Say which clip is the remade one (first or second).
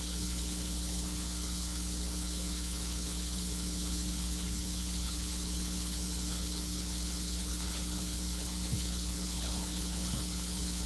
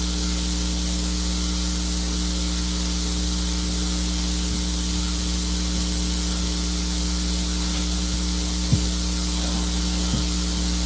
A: first